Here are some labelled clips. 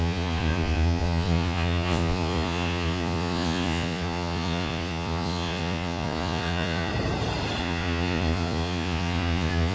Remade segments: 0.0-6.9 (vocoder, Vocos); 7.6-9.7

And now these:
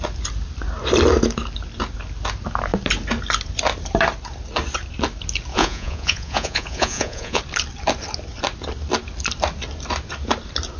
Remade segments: 5.5-7.4 (vocoder, Vocos)

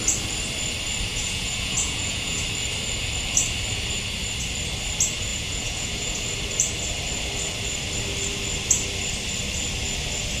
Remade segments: 1.1-2.4 (vocoder, Vocos); 5.3-6.2

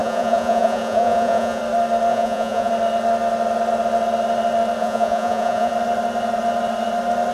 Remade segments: 0.0-1.6 (vocoder, Vocos); 2.1-2.7; 4.8-5.7

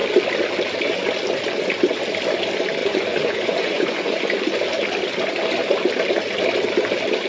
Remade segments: 2.8-4.2 (vocoder, Vocos)